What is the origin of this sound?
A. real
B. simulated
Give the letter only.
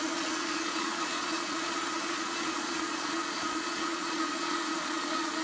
B